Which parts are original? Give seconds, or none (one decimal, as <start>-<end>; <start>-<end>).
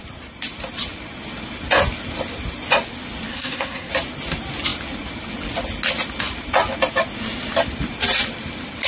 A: 0.0-3.3; 3.9-8.9